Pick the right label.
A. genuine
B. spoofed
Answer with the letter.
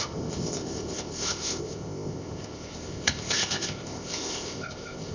B